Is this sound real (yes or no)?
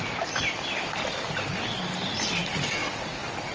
yes